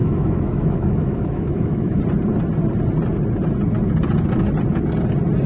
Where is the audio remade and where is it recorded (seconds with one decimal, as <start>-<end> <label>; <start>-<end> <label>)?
0.0-2.0 remade; 2.0-5.5 recorded